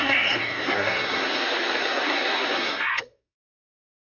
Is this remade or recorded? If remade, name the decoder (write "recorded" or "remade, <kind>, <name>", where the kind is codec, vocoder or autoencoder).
remade, codec, SNAC